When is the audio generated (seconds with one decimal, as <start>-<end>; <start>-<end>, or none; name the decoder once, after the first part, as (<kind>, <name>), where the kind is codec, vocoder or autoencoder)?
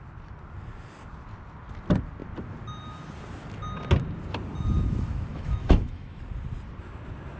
5.3-6.2 (autoencoder, DAC-VAE)